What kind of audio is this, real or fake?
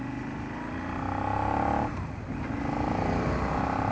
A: real